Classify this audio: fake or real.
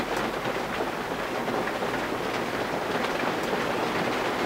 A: real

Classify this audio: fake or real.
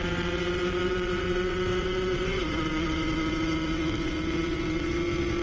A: fake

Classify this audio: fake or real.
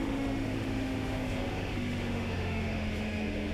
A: fake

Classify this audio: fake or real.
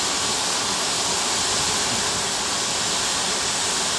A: real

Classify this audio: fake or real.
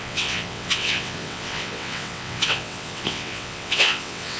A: fake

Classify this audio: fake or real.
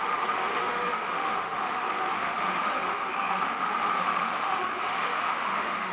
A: fake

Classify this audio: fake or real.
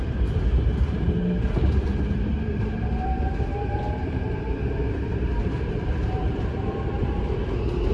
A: fake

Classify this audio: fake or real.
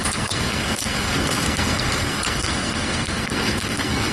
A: fake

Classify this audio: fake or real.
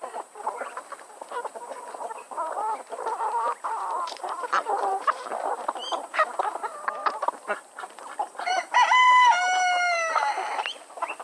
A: fake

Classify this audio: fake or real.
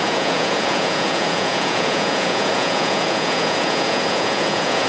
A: fake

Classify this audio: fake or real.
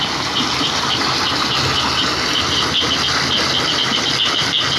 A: real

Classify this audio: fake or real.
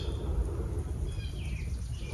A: real